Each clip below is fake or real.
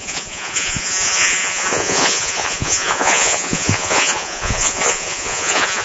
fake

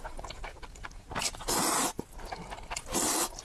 real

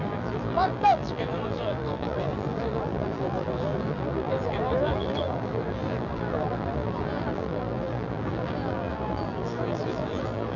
fake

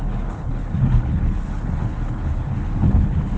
fake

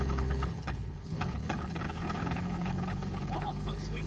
fake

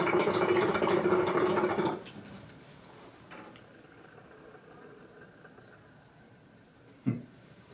real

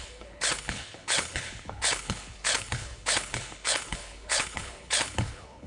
fake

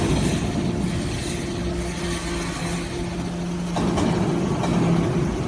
real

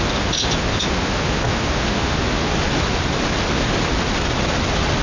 real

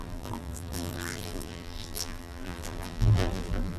fake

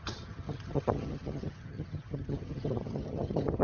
fake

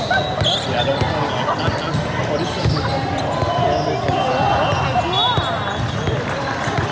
real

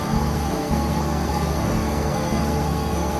fake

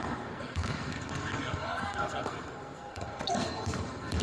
fake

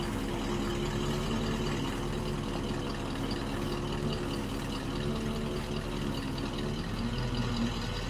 real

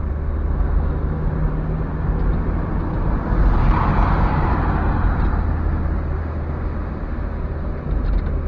real